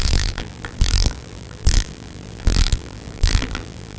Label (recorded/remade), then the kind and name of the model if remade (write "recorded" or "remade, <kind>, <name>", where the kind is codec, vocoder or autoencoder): remade, vocoder, BigVGAN v2